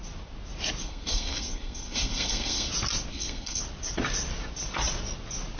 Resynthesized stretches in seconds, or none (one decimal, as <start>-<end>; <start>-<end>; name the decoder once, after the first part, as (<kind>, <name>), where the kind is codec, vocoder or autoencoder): 0.8-2.7 (codec, SNAC); 3.1-3.6